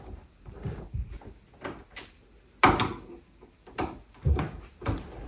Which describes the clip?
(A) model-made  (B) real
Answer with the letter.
B